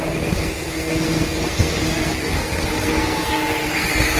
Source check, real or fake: fake